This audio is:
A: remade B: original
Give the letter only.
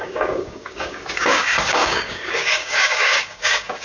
A